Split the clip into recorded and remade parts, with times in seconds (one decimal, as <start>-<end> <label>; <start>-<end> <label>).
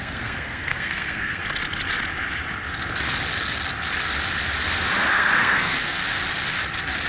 0.0-1.4 remade; 1.4-5.1 recorded; 5.1-6.0 remade; 6.0-7.1 recorded